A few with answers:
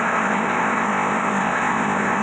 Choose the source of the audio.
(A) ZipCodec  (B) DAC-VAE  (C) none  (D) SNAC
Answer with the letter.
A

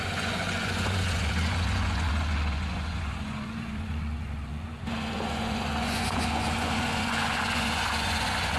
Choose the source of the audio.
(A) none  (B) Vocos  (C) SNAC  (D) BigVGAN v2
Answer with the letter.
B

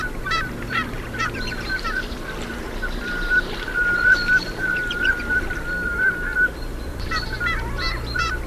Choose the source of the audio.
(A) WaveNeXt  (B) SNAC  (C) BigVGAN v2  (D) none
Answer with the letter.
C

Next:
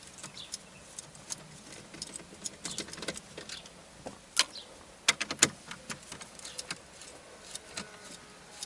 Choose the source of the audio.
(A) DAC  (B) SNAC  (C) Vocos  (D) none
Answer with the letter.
D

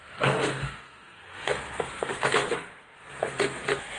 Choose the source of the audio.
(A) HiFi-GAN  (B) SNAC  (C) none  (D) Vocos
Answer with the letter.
B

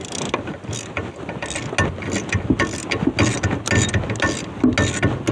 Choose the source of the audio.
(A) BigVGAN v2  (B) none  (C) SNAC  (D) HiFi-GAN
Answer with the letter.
B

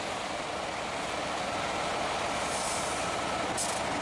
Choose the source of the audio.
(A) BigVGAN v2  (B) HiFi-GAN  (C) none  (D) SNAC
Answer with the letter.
C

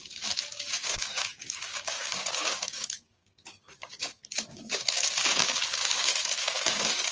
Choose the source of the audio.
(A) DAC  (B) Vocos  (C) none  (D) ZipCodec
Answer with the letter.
A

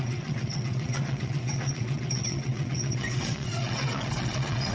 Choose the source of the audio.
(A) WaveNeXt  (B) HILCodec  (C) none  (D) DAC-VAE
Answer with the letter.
A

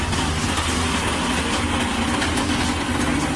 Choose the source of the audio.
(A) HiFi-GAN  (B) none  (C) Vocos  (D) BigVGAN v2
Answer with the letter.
B